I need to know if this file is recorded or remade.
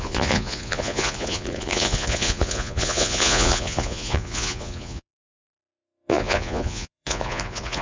remade